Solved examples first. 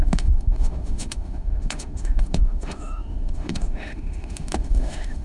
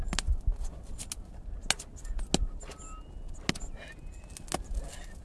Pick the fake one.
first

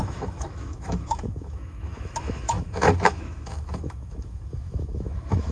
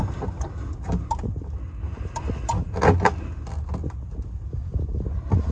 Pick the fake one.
first